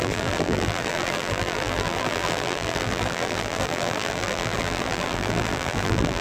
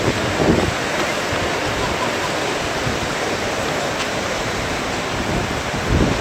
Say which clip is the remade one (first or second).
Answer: first